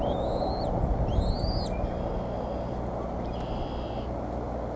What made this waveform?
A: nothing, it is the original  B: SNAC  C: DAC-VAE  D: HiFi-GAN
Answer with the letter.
A